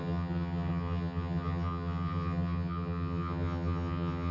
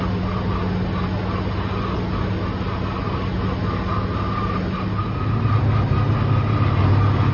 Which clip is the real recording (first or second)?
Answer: second